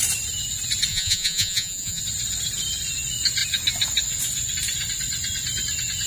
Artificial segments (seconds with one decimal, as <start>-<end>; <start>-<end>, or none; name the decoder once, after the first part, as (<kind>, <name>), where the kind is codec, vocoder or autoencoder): 0.9-2.0 (vocoder, Vocos)